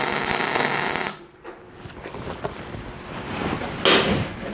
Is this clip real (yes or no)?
yes